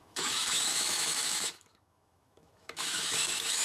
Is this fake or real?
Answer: fake